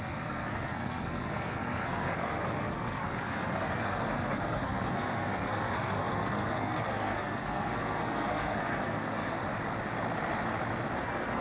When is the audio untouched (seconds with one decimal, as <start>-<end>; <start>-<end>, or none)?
9.4-11.0